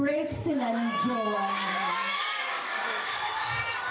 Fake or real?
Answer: fake